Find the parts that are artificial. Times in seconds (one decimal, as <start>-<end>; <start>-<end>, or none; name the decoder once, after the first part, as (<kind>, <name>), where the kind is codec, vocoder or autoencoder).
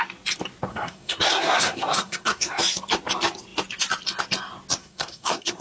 0.7-2.6 (codec, SNAC); 4.8-5.6